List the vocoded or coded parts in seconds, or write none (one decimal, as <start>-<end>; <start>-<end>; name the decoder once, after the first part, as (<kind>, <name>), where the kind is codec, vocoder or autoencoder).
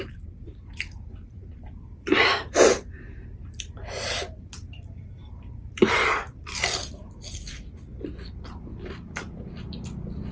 0.0-7.0 (vocoder, BigVGAN v2); 8.3-10.3